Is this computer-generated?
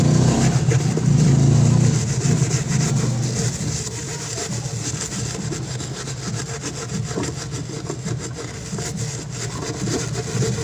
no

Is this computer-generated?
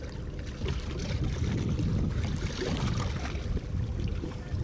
no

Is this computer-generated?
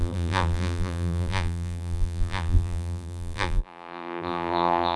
yes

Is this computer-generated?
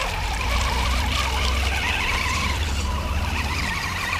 yes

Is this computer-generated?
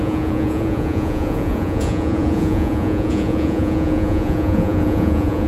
yes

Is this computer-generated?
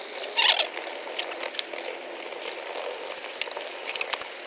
no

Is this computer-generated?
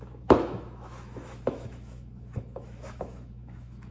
yes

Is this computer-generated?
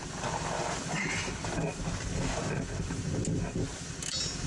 no